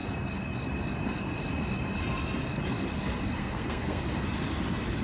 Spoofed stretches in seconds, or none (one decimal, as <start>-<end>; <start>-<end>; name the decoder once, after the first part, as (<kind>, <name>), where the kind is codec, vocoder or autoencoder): 3.4-4.0 (codec, SNAC)